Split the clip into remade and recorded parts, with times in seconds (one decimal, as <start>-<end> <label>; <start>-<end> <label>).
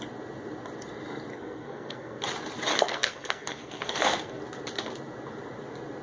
0.0-1.3 recorded; 1.3-2.2 remade; 2.2-2.7 recorded; 2.7-4.4 remade; 4.4-6.0 recorded